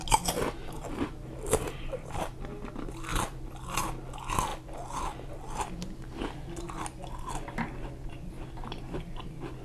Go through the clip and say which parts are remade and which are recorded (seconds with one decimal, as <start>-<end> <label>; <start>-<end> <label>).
0.0-9.6 recorded